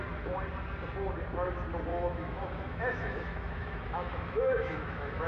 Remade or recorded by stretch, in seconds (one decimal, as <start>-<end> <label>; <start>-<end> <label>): 0.0-1.9 recorded; 1.9-5.3 remade